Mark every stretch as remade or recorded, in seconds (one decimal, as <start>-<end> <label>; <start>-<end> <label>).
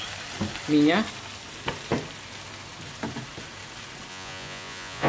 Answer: 0.0-4.1 recorded; 4.1-5.1 remade